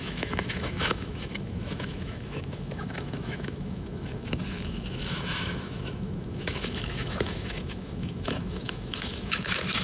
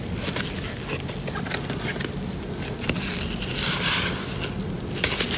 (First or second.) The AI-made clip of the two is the first